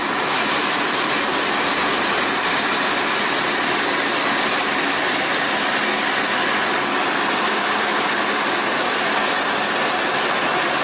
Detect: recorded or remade recorded